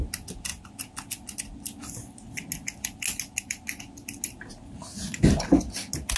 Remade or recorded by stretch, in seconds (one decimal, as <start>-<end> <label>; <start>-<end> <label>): 0.0-6.2 recorded